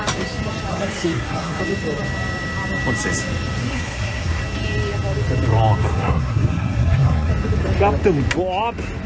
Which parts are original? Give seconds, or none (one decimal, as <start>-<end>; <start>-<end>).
0.0-0.7; 1.6-3.6; 4.4-5.9; 7.3-9.1

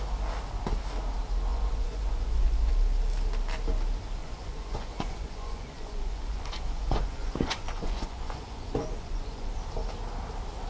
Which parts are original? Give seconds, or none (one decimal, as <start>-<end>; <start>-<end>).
0.0-1.5; 2.7-4.2; 9.5-10.7

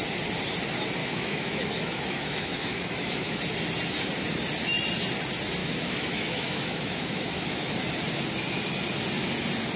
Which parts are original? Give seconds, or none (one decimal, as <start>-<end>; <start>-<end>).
0.0-1.0; 3.4-5.6; 7.8-9.8

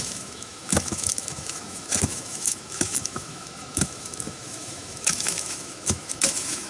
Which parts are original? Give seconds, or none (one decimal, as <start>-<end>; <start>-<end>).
none

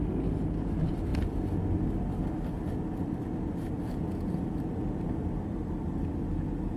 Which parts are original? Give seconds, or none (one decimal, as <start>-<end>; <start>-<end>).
0.0-6.8